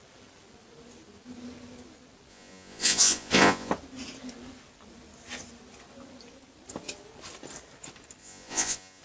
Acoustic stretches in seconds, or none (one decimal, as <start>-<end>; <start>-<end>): 0.0-2.3; 3.7-8.2